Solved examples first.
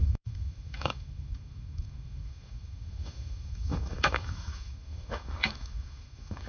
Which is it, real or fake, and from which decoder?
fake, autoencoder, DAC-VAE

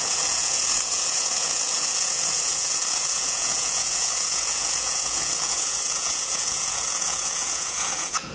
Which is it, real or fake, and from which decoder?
fake, vocoder, Vocos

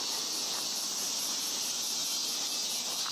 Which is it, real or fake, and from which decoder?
real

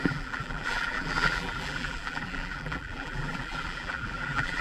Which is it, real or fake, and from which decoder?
fake, vocoder, BigVGAN v2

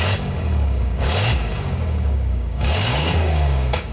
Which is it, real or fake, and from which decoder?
fake, codec, DAC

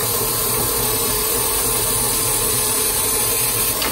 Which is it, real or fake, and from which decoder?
real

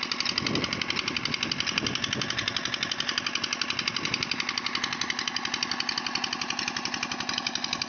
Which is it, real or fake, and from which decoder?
real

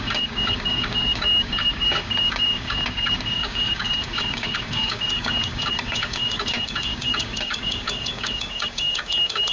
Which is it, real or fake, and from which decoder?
fake, codec, DAC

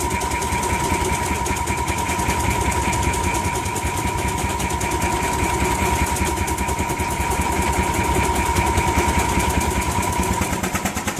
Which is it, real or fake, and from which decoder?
real